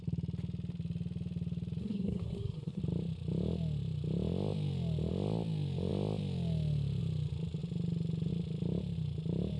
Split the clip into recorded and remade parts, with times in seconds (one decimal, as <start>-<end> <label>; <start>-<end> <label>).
0.0-1.8 recorded; 1.8-2.8 remade; 2.8-9.6 recorded